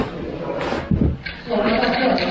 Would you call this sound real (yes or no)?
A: yes